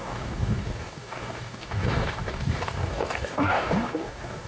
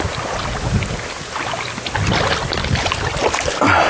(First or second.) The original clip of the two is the second